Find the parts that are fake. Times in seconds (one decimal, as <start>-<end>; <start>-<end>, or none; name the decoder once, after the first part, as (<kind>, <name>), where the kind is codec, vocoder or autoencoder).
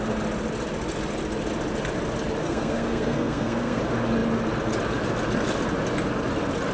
2.4-3.8 (codec, SNAC)